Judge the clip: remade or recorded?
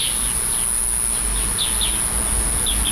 recorded